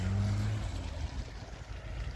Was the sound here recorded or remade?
recorded